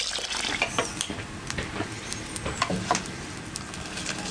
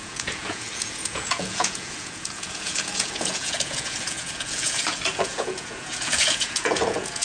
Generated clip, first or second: second